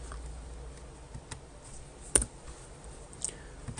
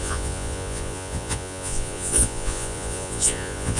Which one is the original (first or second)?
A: first